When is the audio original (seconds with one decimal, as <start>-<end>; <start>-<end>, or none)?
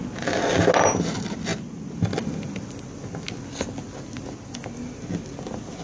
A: 0.0-5.8